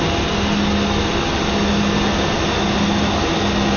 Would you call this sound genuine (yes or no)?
yes